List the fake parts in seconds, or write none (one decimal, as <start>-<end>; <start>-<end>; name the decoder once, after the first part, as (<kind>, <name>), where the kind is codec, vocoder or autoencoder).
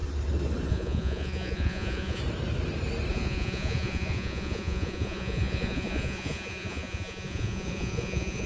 0.7-2.2 (vocoder, Vocos); 3.1-8.5